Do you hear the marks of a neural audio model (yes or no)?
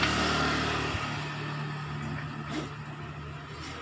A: no